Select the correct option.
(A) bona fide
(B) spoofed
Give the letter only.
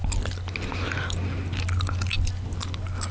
A